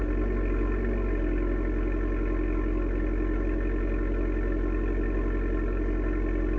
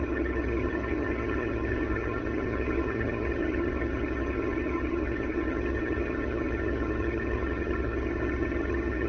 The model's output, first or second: second